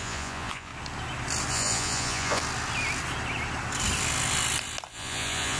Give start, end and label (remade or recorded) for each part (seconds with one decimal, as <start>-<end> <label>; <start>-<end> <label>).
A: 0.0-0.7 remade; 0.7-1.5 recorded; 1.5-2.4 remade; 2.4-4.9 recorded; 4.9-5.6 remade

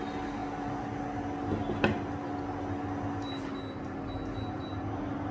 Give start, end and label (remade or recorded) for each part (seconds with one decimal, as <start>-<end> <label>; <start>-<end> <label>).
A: 0.0-5.3 recorded

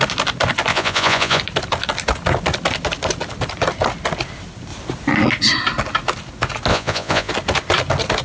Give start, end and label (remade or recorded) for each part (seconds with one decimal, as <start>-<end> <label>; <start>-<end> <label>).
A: 0.0-0.7 recorded; 0.7-1.4 remade; 1.4-6.7 recorded; 6.7-7.3 remade; 7.3-8.2 recorded

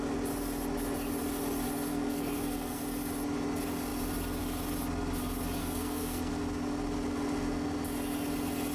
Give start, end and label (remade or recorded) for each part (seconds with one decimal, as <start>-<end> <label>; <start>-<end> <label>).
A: 0.0-1.9 recorded; 1.9-2.8 remade; 2.8-5.6 recorded; 5.6-6.3 remade; 6.3-8.7 recorded

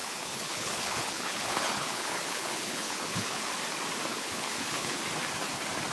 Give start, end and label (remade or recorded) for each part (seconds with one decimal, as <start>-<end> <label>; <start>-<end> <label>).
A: 0.0-3.5 remade; 3.5-4.1 recorded; 4.1-5.0 remade; 5.0-5.9 recorded

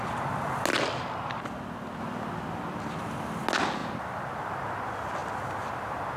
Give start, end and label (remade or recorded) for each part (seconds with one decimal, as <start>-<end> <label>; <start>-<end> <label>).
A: 0.0-6.2 recorded

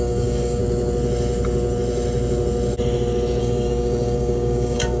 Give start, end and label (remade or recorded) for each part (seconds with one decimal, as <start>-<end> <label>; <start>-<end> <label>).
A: 0.0-0.6 remade; 0.6-3.4 recorded; 3.4-5.0 remade